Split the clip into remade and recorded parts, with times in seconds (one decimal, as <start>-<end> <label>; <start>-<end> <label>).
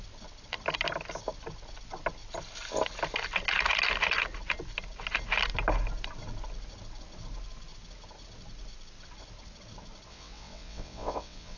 0.0-10.1 recorded; 10.1-11.6 remade